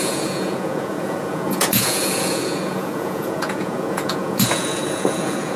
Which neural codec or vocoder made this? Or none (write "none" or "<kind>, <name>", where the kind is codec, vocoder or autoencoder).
vocoder, Vocos